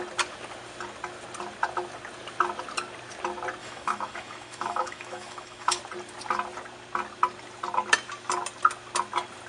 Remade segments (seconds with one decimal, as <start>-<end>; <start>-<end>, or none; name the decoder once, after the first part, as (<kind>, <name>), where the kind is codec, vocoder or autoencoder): 3.6-5.8 (autoencoder, DAC-VAE)